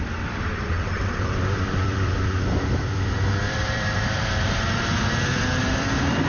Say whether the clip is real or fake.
fake